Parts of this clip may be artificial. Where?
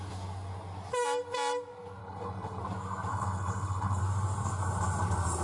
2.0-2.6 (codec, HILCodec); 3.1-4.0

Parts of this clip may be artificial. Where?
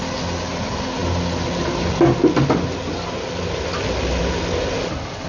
none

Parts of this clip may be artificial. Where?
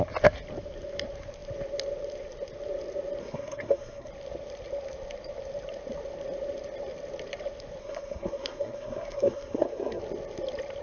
3.2-4.1 (codec, SNAC); 7.8-10.0